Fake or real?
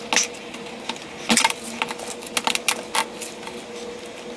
real